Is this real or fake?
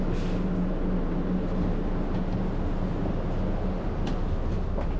real